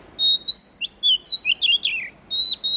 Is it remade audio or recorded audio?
recorded